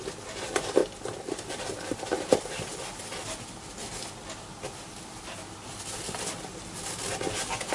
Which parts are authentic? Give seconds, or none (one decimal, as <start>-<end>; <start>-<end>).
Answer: 0.0-7.7